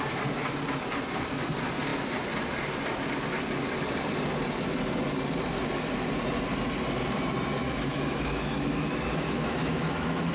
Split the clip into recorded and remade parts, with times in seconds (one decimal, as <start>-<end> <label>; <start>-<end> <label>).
0.0-7.6 recorded; 7.6-10.3 remade